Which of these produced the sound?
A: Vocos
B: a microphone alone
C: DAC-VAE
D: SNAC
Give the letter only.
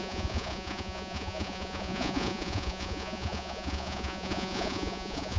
A